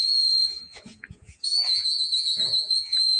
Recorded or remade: remade